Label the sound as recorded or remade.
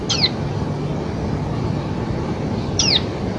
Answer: recorded